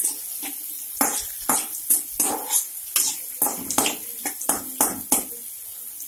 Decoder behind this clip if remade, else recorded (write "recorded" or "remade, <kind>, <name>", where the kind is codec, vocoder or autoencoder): recorded